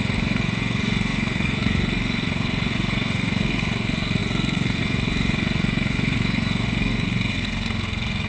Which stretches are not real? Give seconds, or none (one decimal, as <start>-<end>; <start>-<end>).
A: 0.0-8.3